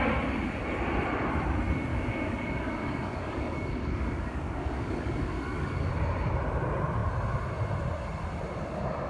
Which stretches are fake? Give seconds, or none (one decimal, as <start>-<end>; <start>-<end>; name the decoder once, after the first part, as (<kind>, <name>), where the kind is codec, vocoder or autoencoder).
1.9-5.9 (codec, DAC)